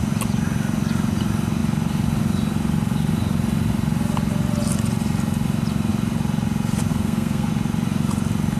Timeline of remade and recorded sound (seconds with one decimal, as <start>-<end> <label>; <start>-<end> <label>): 0.0-6.9 recorded; 6.9-7.5 remade; 7.5-8.6 recorded